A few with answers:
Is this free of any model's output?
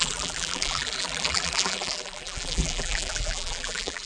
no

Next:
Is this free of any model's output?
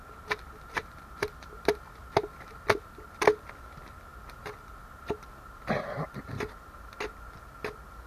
yes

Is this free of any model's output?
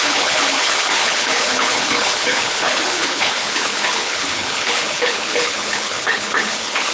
no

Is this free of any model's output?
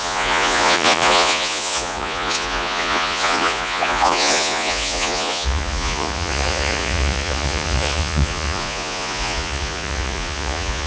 no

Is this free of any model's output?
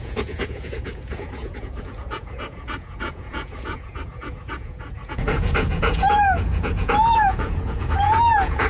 no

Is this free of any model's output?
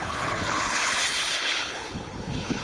no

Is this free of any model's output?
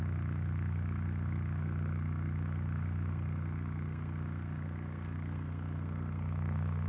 no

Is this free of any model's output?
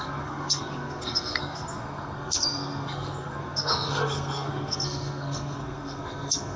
no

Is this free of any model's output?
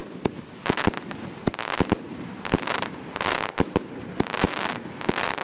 yes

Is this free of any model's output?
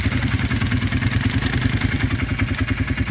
yes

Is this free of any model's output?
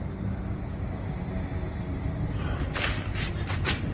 no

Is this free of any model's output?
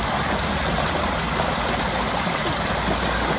yes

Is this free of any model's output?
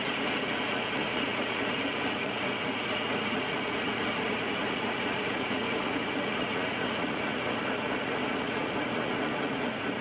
no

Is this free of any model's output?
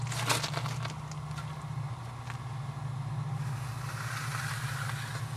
yes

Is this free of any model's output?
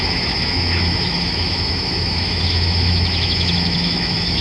no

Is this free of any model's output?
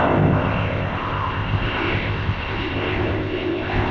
no